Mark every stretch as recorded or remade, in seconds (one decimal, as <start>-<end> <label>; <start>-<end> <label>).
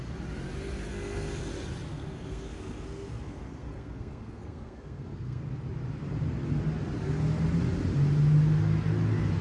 0.0-0.9 recorded; 0.9-1.4 remade; 1.4-1.9 recorded; 1.9-5.4 remade; 5.4-9.4 recorded